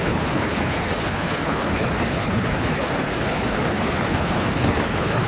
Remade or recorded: remade